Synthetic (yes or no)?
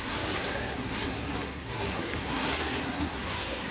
yes